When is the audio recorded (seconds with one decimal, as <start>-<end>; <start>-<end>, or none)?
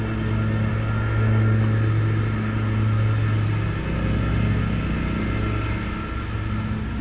0.0-7.0